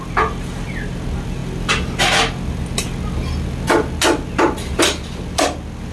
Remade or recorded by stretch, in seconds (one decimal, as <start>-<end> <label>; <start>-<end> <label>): 0.0-5.9 recorded